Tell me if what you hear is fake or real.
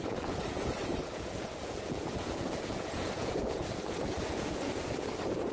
fake